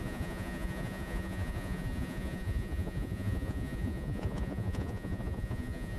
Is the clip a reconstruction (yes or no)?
yes